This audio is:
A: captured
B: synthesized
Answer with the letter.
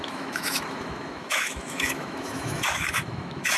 B